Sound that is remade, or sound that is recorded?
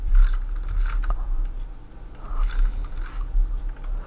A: recorded